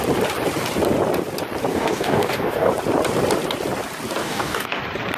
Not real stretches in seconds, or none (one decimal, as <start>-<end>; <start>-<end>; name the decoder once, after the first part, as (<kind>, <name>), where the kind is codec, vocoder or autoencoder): 1.7-2.7 (codec, DAC); 4.2-4.8